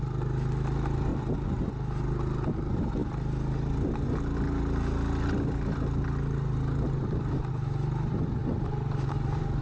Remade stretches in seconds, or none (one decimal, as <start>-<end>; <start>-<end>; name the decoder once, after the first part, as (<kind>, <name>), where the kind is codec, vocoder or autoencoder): 1.1-1.6 (vocoder, BigVGAN v2); 8.4-9.6